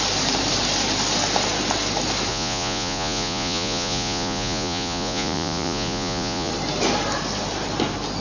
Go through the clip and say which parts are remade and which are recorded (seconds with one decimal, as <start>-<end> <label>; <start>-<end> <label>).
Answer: 0.0-2.3 recorded; 2.3-6.5 remade; 6.5-8.2 recorded